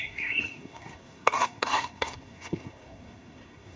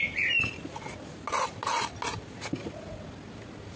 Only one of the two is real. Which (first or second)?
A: second